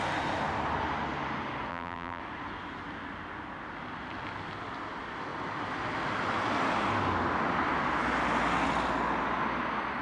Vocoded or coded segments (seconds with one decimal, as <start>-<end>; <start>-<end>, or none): 1.7-2.2